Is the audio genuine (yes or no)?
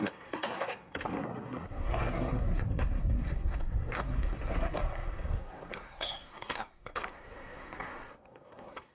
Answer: no